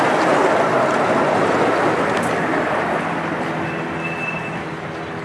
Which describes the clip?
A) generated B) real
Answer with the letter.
B